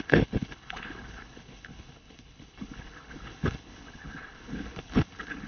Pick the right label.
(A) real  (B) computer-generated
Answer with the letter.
B